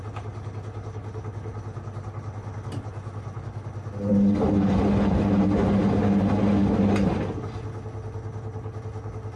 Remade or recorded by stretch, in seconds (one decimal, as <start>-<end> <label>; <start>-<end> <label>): 0.0-9.4 recorded